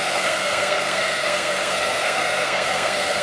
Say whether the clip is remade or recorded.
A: remade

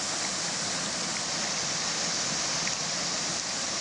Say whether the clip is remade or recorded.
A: recorded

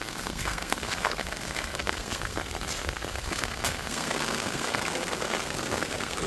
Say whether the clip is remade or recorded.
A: remade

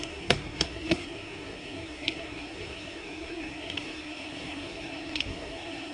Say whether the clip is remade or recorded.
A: remade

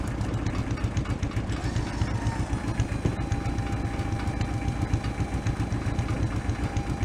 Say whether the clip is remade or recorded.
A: recorded